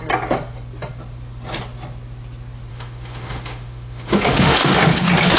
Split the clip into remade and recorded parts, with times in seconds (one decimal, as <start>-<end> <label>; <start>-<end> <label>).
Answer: 0.0-2.7 recorded; 2.7-4.9 remade; 4.9-5.4 recorded